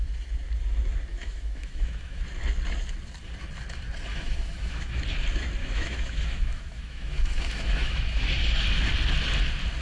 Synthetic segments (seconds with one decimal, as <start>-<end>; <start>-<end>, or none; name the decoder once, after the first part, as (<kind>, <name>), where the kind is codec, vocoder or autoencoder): 1.1-2.2 (autoencoder, DAC-VAE); 4.1-5.0; 5.6-8.4